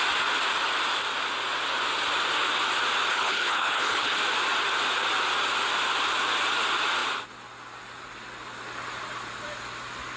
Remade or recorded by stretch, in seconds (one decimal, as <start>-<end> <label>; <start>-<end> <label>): 0.0-3.1 recorded; 3.1-4.2 remade; 4.2-10.2 recorded